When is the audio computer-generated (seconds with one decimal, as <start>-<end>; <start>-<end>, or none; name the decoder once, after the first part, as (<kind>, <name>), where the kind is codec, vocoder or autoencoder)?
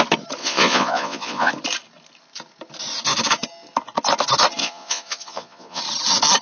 0.4-1.5 (vocoder, Vocos); 4.6-5.8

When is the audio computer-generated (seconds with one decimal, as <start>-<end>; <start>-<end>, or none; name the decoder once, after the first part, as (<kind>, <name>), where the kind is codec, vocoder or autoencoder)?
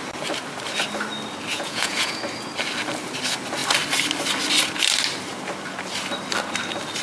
1.5-2.2 (vocoder, Vocos)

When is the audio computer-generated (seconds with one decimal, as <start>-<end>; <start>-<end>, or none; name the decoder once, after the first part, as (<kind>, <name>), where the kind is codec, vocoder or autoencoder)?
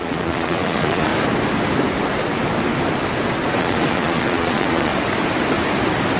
0.0-1.1 (vocoder, Vocos); 3.6-4.9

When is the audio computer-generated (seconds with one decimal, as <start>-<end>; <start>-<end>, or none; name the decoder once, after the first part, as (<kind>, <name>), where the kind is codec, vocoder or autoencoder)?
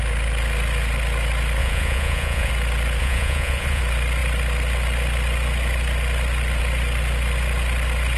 1.6-2.5 (vocoder, Vocos); 3.0-3.8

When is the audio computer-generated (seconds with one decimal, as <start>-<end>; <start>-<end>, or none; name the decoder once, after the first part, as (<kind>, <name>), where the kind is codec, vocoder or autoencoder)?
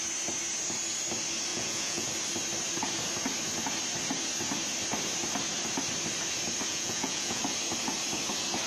1.5-2.1 (vocoder, Vocos); 6.7-7.4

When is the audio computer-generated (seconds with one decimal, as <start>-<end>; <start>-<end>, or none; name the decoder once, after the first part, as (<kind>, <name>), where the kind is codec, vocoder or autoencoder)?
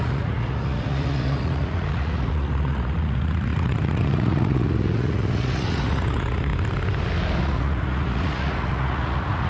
0.0-6.5 (vocoder, Vocos); 7.4-9.5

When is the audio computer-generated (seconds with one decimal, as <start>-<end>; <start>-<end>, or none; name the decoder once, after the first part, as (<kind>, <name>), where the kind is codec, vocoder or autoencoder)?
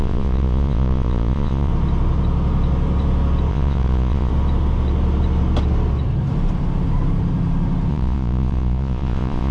0.0-1.7 (vocoder, Vocos); 3.5-4.3; 7.9-9.5